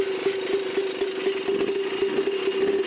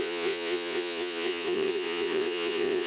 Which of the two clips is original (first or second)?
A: first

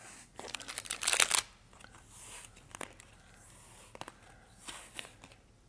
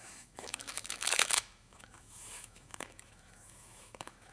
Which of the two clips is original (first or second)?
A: first